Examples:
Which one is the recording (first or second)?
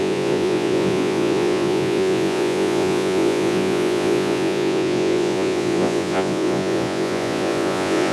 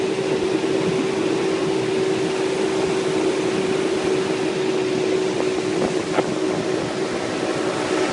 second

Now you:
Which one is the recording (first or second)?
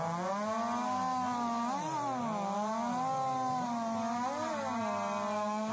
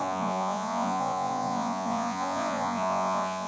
first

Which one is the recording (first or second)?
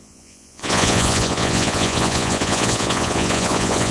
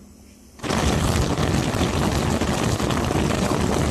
second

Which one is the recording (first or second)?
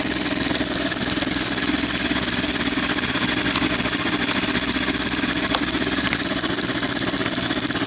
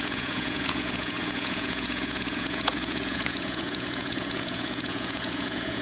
first